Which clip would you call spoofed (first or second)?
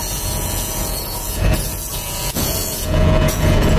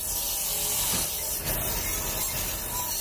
first